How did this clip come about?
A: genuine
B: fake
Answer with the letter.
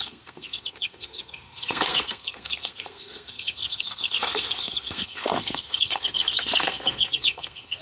B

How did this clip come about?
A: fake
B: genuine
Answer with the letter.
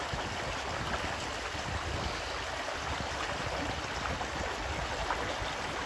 B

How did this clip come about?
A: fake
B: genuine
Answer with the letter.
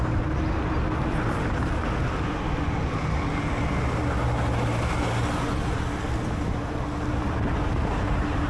B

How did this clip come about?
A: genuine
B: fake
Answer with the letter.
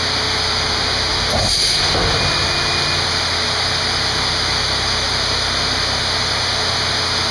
A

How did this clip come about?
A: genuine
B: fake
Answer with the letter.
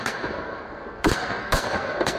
B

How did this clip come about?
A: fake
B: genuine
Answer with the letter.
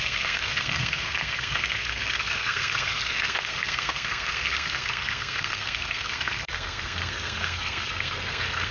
A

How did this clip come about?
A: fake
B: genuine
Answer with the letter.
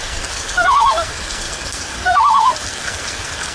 A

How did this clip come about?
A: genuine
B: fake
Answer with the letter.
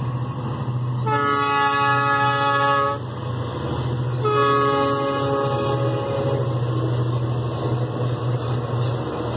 A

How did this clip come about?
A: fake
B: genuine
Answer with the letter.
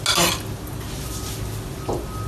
B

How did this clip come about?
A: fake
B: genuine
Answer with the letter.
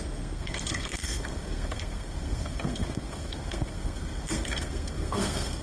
A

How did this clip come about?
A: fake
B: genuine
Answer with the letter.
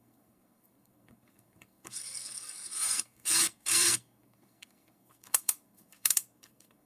A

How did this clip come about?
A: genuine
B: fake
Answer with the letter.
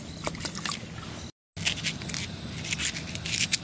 A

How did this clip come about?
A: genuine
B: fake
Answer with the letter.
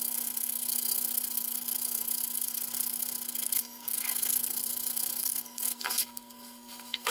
B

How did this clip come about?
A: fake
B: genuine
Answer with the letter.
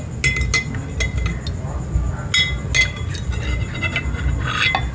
B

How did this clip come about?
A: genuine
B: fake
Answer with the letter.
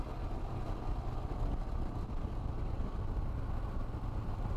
A